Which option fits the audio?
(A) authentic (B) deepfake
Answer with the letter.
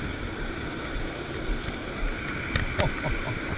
A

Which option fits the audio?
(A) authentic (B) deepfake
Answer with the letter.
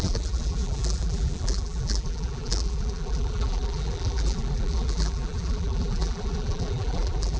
B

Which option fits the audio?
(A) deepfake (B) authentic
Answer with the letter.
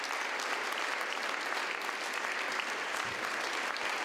B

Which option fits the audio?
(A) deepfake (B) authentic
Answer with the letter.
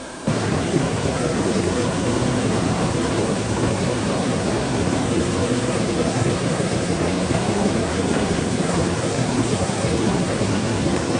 A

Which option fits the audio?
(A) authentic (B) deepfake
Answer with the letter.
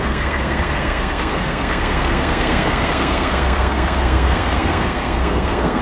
B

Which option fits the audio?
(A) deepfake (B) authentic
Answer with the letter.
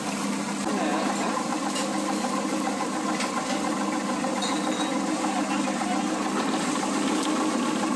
B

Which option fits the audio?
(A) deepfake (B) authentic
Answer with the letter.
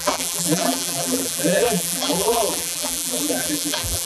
A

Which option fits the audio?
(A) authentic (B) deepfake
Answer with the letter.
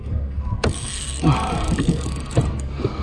B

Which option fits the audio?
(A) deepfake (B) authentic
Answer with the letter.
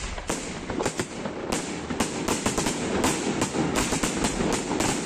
B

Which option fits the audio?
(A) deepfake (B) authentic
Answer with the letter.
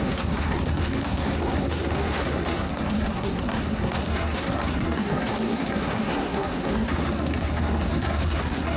A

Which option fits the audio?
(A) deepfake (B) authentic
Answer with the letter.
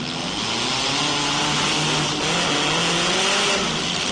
B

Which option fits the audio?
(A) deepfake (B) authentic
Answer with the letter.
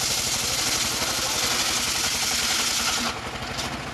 B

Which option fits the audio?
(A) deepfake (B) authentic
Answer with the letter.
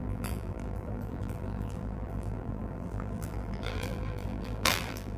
A